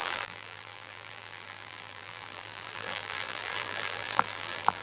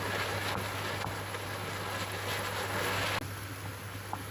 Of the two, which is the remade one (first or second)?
first